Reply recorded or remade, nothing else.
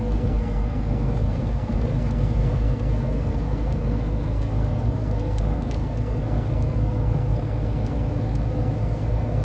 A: remade